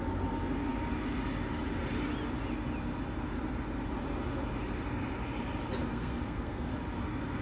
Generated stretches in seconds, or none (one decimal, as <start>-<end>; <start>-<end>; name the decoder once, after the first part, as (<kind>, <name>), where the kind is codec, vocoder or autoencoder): 5.8-6.7 (codec, SNAC)